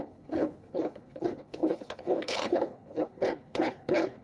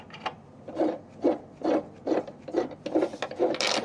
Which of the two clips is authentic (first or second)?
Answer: second